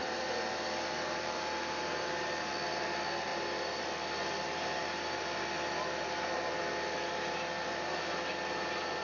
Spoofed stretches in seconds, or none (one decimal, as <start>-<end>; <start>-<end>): 0.0-2.5; 3.3-3.9